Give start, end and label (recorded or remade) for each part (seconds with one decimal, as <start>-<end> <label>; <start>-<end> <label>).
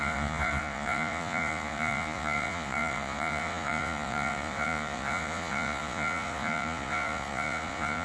0.0-8.0 remade